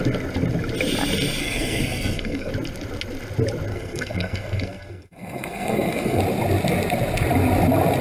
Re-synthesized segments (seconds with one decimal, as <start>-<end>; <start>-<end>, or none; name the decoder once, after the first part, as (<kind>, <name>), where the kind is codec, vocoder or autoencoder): 1.4-2.5 (codec, SNAC); 3.7-6.2